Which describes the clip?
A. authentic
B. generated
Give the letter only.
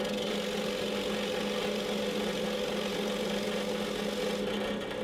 A